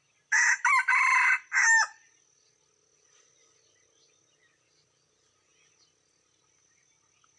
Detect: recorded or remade recorded